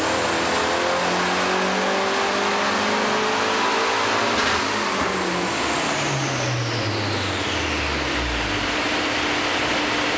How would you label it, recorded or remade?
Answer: recorded